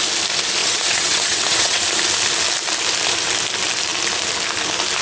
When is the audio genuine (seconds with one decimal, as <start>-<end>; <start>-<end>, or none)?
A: 0.0-0.6; 1.8-5.0